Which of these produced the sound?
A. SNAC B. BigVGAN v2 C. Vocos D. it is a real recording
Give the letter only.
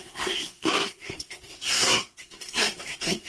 A